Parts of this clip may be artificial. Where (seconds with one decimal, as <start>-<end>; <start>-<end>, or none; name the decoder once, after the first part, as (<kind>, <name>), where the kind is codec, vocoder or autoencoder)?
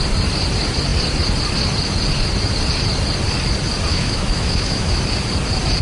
3.9-5.0 (autoencoder, DAC-VAE)